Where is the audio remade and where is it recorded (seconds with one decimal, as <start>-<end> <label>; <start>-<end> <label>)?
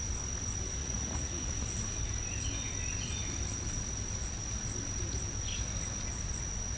0.0-0.8 recorded; 0.8-1.5 remade; 1.5-6.8 recorded